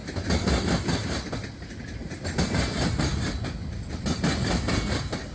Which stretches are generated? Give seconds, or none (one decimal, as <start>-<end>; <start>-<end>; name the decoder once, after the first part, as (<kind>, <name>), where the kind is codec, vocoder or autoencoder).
3.1-4.0 (vocoder, BigVGAN v2)